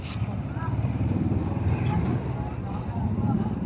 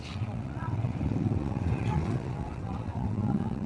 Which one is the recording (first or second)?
first